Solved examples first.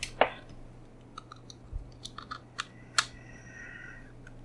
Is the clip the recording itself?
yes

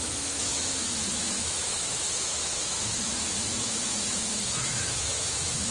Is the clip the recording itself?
no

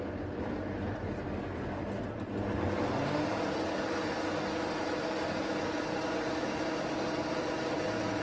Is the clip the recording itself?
yes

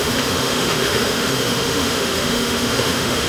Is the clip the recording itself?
no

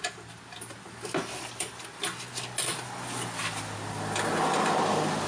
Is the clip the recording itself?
yes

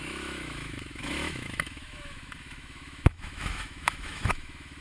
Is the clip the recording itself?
no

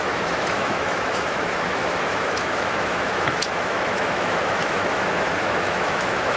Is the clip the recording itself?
no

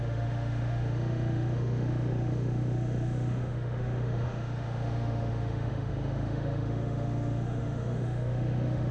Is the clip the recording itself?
no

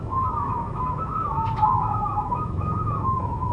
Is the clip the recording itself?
no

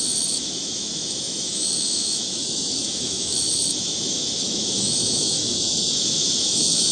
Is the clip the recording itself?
no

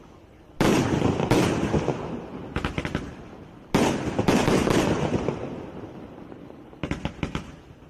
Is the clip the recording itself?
yes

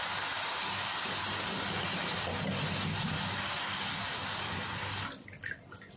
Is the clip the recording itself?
yes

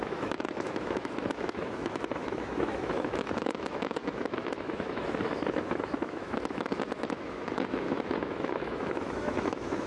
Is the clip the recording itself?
no